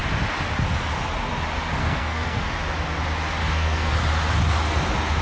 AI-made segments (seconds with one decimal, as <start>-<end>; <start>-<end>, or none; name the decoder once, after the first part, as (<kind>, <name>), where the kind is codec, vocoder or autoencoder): 1.8-2.5 (codec, SNAC); 3.4-3.9